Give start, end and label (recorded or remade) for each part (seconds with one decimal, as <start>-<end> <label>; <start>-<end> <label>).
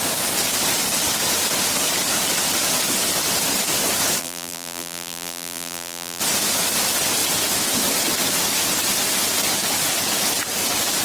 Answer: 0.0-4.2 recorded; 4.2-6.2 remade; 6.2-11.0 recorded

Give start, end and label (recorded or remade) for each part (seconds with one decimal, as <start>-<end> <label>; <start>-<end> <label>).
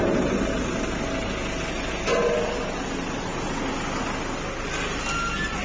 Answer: 0.0-5.6 recorded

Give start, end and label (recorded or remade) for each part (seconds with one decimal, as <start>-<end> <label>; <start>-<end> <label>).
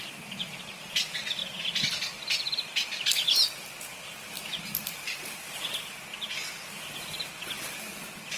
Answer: 0.0-1.4 remade; 1.4-4.9 recorded; 4.9-8.4 remade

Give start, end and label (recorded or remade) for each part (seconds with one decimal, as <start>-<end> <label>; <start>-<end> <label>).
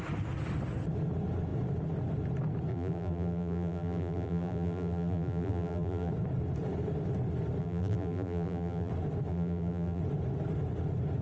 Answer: 0.0-2.7 recorded; 2.7-6.1 remade; 6.1-7.6 recorded; 7.6-8.9 remade; 8.9-9.3 recorded; 9.3-10.0 remade; 10.0-11.2 recorded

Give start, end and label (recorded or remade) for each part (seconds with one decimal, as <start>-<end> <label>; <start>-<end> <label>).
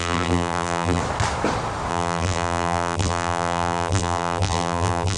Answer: 0.0-1.0 remade; 1.0-1.9 recorded; 1.9-5.2 remade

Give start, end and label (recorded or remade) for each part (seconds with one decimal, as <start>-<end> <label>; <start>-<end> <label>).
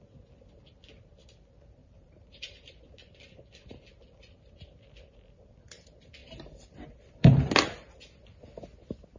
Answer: 0.0-1.8 recorded; 1.8-2.8 remade; 2.8-6.2 recorded; 6.2-7.5 remade; 7.5-9.2 recorded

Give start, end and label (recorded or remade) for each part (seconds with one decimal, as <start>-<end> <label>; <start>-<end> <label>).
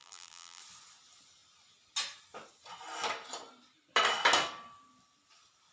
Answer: 0.0-0.6 remade; 0.6-5.7 recorded